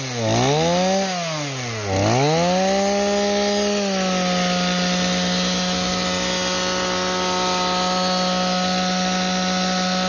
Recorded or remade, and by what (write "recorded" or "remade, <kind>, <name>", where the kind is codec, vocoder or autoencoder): recorded